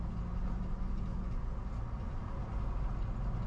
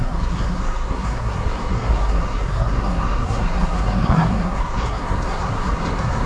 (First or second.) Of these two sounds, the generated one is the second